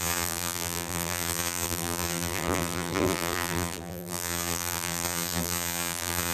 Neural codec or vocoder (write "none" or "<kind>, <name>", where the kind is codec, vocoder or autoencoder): vocoder, BigVGAN v2